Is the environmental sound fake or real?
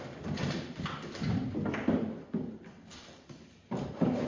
real